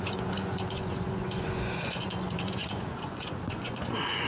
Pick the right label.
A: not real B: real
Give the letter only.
A